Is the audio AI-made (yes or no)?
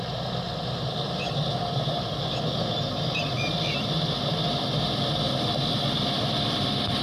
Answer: no